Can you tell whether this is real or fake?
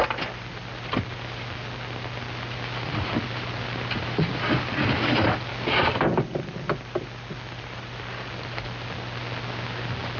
real